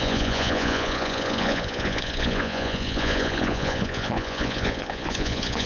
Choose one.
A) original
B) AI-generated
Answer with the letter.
B